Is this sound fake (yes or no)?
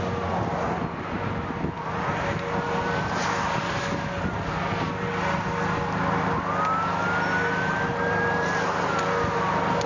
no